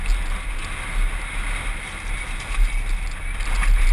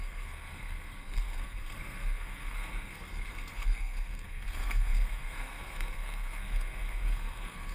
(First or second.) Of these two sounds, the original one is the first